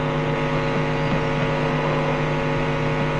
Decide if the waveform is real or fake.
real